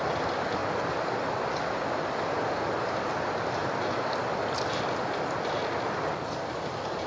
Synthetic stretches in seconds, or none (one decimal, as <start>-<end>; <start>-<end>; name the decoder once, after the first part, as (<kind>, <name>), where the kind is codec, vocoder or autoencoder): 0.0-0.6 (vocoder, BigVGAN v2); 2.2-3.6; 4.8-5.6